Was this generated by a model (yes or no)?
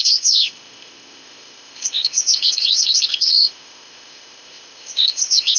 yes